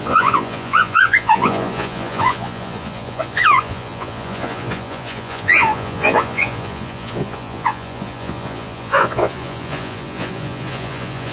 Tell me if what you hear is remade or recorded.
remade